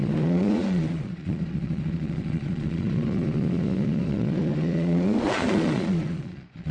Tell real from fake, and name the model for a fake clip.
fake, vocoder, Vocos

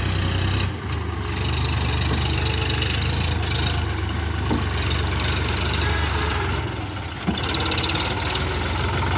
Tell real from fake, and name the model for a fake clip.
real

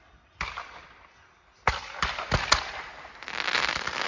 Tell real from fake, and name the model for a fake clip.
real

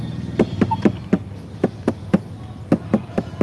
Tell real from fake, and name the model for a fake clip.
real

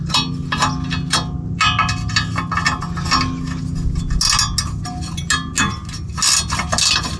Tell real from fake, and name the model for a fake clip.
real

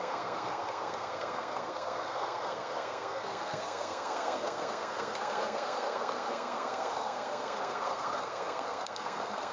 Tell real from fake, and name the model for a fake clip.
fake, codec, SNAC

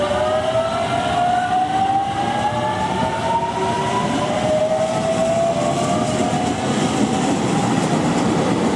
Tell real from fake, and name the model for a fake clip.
real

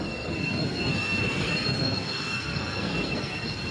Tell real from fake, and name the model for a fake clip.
fake, codec, SNAC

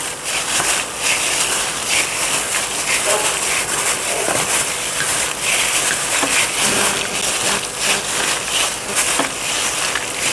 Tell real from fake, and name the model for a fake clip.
real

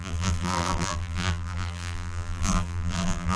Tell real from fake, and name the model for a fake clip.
fake, vocoder, BigVGAN v2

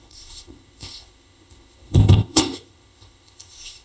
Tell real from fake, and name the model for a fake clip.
fake, codec, ZipCodec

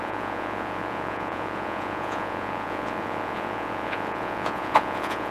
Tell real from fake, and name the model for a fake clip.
fake, vocoder, Vocos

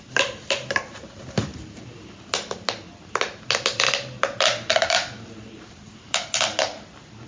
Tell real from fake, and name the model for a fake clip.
real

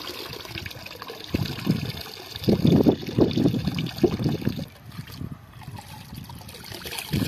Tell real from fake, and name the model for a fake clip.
real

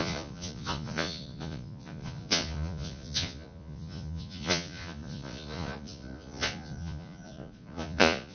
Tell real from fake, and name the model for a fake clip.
fake, vocoder, Vocos